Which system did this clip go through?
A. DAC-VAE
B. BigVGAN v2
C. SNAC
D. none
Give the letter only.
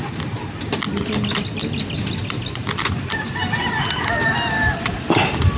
D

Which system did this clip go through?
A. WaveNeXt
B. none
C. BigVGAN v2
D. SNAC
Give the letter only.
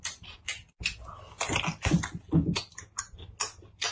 B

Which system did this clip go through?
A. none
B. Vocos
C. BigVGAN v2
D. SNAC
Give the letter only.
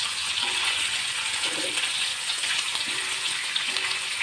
B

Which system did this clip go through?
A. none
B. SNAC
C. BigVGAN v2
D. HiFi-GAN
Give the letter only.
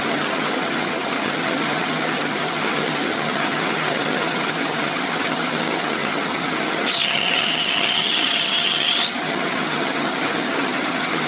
D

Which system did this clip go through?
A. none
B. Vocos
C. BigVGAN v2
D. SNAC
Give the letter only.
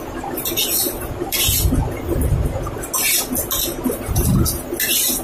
A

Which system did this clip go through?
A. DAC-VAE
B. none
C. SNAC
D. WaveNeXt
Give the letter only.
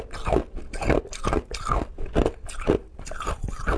B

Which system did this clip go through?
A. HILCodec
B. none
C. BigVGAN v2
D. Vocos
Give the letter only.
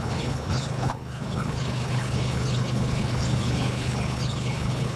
A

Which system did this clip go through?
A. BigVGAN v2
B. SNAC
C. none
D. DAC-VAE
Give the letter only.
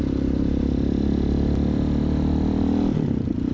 A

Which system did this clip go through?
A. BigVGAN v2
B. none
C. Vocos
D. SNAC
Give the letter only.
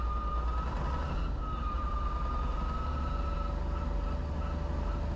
B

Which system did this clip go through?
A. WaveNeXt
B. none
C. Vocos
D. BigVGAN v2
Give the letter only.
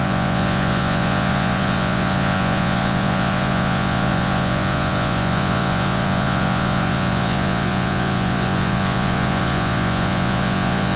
C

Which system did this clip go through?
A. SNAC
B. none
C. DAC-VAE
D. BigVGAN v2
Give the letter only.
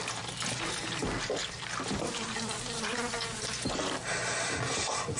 B